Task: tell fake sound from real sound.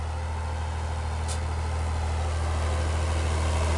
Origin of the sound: real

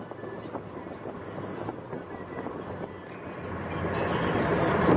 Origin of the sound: real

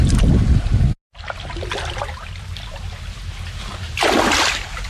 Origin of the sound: real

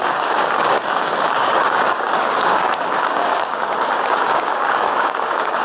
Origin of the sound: fake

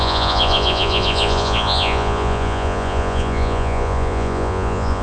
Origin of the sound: fake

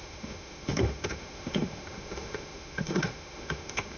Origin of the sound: fake